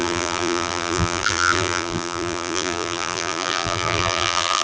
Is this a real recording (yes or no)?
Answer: no